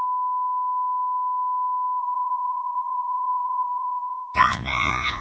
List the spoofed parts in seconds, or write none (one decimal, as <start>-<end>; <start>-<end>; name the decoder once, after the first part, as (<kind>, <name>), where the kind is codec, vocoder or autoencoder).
2.0-5.2 (vocoder, Vocos)